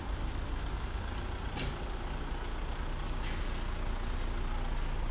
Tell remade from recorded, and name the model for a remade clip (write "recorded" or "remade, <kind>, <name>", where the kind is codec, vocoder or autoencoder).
recorded